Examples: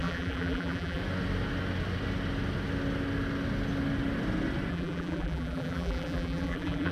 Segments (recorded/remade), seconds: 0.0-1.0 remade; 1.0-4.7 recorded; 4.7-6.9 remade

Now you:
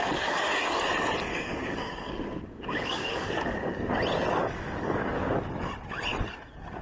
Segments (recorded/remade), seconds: 0.0-1.3 recorded; 1.3-3.9 remade; 3.9-4.4 recorded; 4.4-5.4 remade; 5.4-6.8 recorded

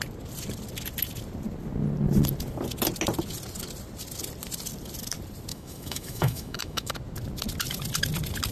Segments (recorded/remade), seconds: 0.0-5.5 recorded; 5.5-6.9 remade; 6.9-8.5 recorded